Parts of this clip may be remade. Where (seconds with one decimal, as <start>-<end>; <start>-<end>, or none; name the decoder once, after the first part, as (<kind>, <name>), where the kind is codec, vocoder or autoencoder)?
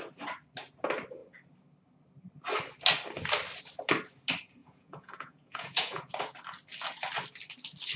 4.6-6.0 (vocoder, Vocos)